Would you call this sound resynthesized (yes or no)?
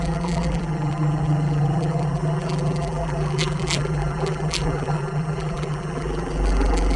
yes